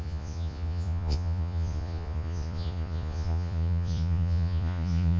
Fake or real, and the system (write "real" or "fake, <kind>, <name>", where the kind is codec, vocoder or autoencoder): fake, vocoder, Vocos